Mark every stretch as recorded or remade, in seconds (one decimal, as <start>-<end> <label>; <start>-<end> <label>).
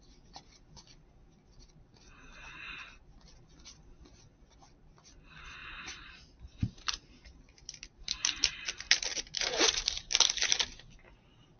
0.0-5.6 recorded; 5.6-10.5 remade; 10.5-11.6 recorded